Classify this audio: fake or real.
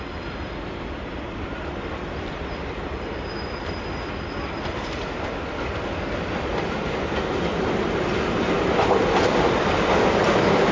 fake